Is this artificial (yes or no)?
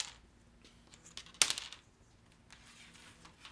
no